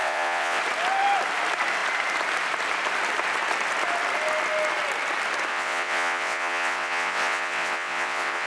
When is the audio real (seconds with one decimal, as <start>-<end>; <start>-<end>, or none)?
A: 0.6-5.5